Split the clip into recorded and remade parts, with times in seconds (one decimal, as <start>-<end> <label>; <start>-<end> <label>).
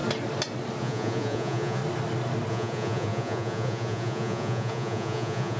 0.0-0.8 recorded; 0.8-1.8 remade; 1.8-2.5 recorded; 2.5-5.6 remade